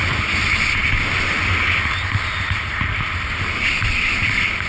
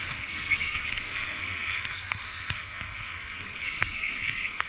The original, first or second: first